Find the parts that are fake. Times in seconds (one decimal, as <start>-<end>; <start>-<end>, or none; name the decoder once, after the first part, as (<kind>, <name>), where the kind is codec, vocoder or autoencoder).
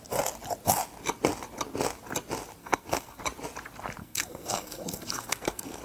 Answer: 2.6-3.2 (codec, SNAC); 4.0-5.8